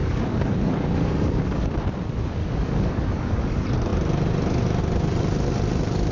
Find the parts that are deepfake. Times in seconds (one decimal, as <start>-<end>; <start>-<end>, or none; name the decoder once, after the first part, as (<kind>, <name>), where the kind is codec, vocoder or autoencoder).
0.0-1.8 (codec, DAC); 2.4-3.4